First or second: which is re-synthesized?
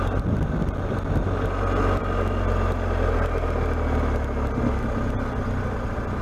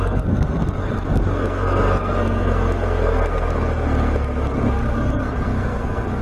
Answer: second